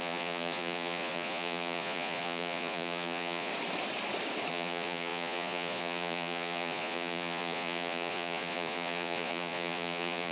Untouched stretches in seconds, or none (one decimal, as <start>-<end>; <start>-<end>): 3.5-4.5